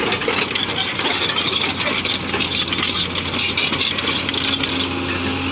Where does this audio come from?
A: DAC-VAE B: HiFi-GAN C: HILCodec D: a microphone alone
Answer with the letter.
D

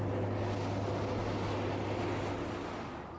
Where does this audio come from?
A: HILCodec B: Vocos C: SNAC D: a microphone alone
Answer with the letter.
D